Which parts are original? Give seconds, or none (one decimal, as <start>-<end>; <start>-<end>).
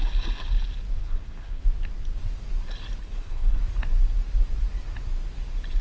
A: 0.0-1.0; 1.6-3.0; 3.6-5.8